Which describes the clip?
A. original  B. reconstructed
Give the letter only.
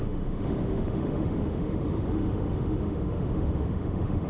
B